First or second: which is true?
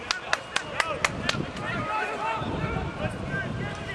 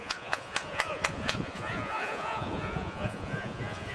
first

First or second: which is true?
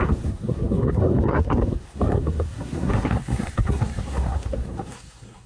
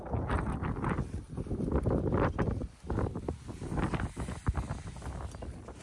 second